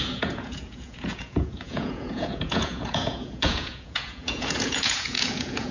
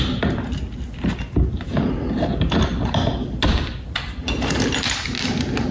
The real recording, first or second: second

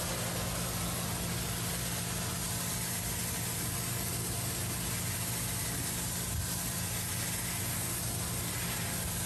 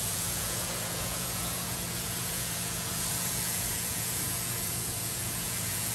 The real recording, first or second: first